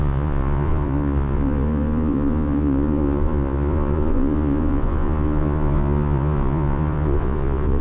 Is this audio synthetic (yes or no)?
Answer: yes